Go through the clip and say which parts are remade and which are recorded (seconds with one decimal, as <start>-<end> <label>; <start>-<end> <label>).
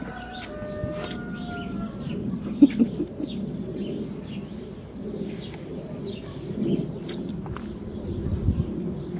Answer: 0.0-9.2 recorded